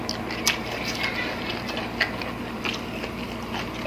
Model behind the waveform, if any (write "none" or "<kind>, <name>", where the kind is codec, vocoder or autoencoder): none